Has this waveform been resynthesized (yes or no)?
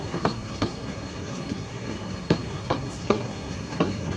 yes